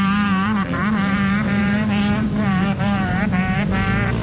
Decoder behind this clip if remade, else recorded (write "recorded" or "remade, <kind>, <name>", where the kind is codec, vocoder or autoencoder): remade, vocoder, BigVGAN v2